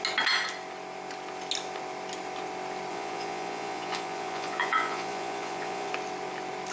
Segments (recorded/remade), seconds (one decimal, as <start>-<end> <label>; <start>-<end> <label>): 0.0-2.9 recorded; 2.9-5.9 remade; 5.9-6.7 recorded